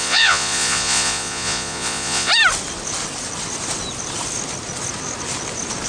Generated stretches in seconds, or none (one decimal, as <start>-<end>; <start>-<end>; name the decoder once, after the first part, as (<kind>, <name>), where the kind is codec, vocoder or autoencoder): 0.0-2.3 (vocoder, Vocos)